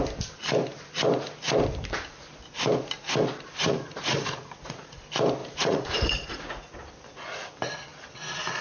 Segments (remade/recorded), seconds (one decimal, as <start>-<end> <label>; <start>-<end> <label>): 0.0-3.6 recorded; 3.6-5.0 remade; 5.0-5.4 recorded; 5.4-6.9 remade; 6.9-8.6 recorded